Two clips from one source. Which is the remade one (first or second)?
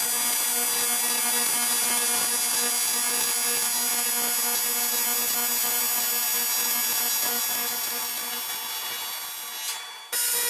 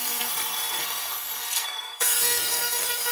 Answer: second